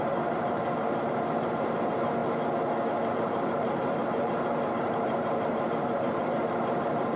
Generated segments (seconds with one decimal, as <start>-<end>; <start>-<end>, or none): 0.0-2.2; 3.1-7.2